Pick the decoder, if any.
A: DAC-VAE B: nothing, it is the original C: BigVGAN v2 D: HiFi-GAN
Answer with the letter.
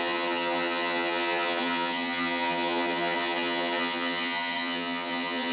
D